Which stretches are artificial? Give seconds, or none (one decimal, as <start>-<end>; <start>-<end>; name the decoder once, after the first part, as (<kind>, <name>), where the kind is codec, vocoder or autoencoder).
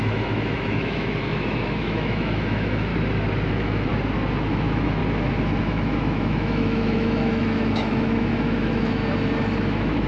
0.0-2.9 (autoencoder, DAC-VAE); 3.5-3.9; 4.5-5.0; 5.6-9.0; 9.6-10.1